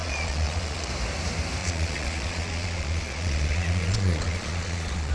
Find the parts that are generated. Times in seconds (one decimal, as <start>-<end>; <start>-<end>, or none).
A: 0.0-0.9; 1.6-5.1